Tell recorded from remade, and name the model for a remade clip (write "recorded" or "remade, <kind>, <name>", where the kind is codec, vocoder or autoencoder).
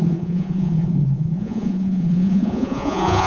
remade, vocoder, Vocos